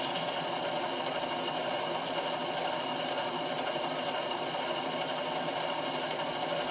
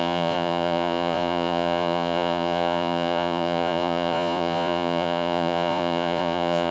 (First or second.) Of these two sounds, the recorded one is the first